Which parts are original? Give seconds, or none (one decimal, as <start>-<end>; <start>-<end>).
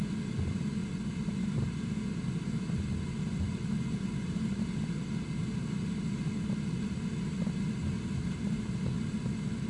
0.0-9.7